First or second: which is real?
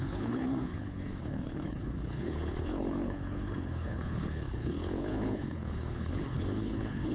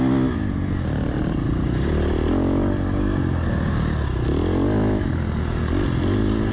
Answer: second